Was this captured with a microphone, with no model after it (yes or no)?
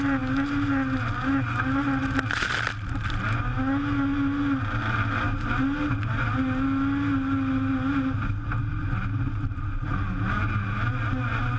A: yes